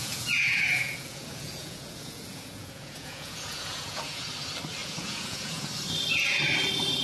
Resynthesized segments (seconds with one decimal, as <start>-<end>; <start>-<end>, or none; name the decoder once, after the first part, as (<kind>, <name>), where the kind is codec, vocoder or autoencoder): 0.0-4.2 (vocoder, Vocos); 4.8-5.7